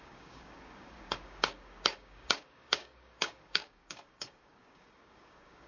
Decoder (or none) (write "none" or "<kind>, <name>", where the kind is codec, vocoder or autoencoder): codec, DAC